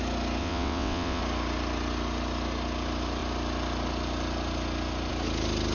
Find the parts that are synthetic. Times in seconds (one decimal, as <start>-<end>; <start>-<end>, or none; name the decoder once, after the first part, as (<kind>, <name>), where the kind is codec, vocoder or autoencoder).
0.4-1.2 (vocoder, WaveNeXt)